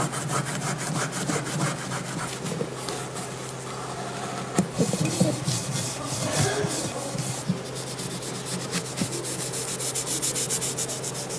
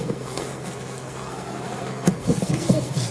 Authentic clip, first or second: first